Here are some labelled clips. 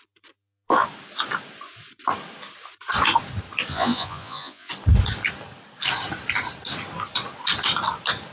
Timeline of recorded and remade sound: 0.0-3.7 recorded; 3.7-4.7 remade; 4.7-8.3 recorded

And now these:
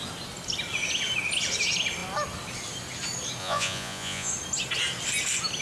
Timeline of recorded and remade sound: 0.0-3.4 recorded; 3.4-4.3 remade; 4.3-5.6 recorded

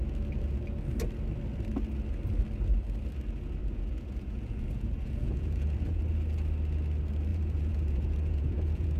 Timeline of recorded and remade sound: 0.0-3.6 recorded; 3.6-6.0 remade; 6.0-7.3 recorded; 7.3-9.0 remade

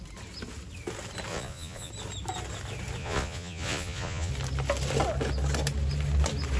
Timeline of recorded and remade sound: 0.0-1.3 recorded; 1.3-1.9 remade; 1.9-3.0 recorded; 3.0-4.3 remade; 4.3-6.6 recorded